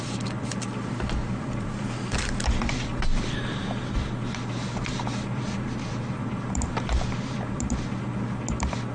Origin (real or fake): fake